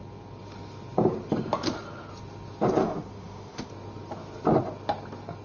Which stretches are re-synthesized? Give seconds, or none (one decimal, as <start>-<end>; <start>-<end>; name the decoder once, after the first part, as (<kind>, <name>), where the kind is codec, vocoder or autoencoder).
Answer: 2.8-3.7 (autoencoder, DAC-VAE)